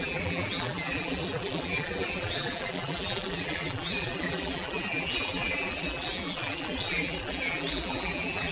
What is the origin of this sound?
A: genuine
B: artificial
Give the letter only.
B